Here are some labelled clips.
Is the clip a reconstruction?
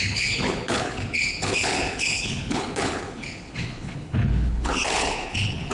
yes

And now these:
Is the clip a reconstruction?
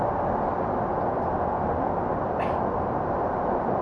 no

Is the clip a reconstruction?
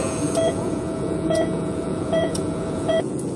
yes